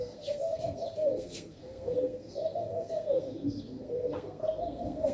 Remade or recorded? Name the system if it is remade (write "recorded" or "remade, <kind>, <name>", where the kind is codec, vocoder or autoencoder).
remade, codec, SNAC